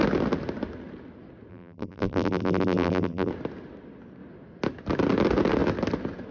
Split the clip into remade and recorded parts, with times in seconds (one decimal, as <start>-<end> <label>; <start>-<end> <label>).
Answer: 0.0-1.5 recorded; 1.5-3.3 remade; 3.3-6.3 recorded